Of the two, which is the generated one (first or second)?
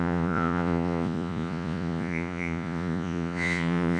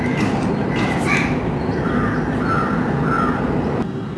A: first